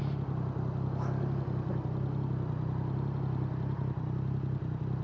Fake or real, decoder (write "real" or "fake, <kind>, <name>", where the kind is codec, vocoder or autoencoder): real